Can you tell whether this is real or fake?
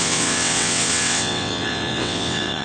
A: fake